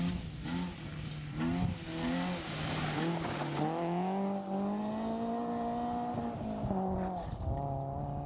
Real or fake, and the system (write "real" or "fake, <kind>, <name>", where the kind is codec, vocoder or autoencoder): real